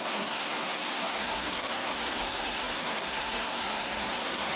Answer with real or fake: fake